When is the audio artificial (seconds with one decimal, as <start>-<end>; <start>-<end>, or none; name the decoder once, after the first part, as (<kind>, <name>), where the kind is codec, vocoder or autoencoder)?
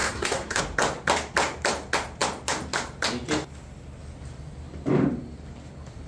0.0-0.6 (codec, SNAC)